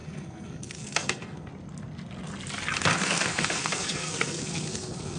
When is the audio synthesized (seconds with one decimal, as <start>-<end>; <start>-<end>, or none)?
0.0-1.5; 2.8-5.2